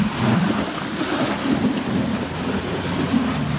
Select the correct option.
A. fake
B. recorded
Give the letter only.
B